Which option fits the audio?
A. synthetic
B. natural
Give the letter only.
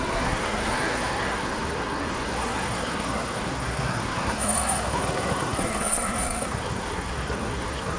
A